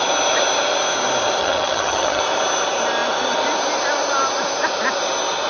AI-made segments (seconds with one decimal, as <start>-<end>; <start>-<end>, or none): 1.4-2.2